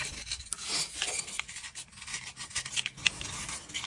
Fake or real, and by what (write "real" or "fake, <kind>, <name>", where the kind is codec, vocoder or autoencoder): real